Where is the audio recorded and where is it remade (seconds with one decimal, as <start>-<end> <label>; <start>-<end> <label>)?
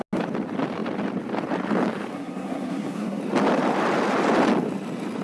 0.0-2.1 recorded; 2.1-3.2 remade; 3.2-5.2 recorded